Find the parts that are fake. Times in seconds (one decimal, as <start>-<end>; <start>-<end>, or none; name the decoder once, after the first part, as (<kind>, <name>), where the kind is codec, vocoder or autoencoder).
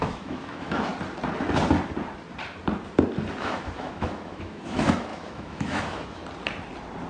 0.0-0.9 (autoencoder, DAC-VAE); 3.4-6.2